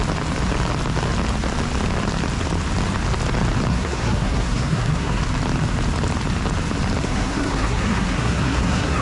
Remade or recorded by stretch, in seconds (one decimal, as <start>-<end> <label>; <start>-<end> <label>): 0.0-3.7 recorded; 3.7-5.2 remade; 5.2-7.0 recorded; 7.0-9.0 remade